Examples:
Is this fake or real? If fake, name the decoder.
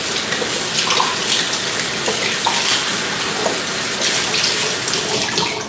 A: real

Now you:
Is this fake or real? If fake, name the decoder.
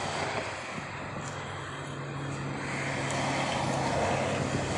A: real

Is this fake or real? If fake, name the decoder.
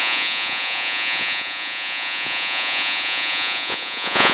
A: fake, vocoder, Vocos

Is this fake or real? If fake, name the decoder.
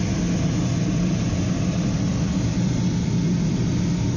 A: real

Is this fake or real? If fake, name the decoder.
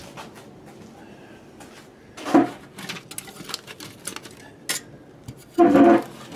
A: real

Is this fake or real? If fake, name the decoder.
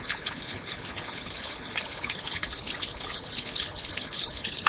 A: fake, codec, HILCodec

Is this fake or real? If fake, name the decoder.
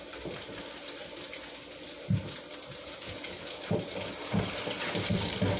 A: real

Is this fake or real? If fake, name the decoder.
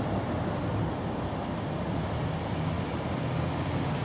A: real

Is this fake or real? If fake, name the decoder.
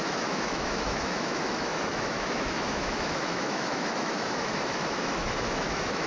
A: fake, autoencoder, DAC-VAE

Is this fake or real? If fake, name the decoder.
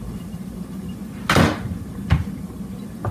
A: real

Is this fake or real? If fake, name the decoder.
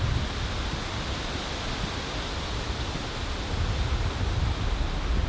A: real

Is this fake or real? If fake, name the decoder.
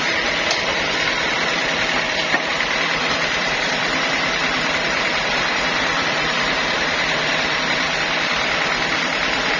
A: fake, vocoder, BigVGAN v2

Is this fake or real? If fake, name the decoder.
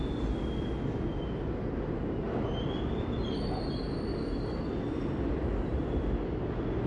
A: real